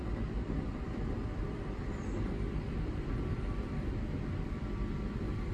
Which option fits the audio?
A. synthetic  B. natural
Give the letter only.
A